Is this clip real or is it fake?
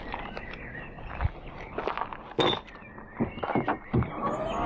real